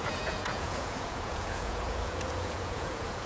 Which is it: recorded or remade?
remade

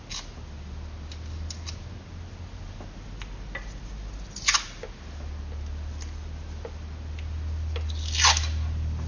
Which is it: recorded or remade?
recorded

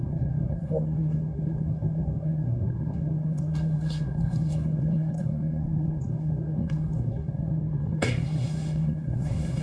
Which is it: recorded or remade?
remade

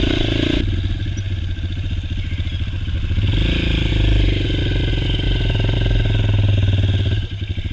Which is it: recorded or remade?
recorded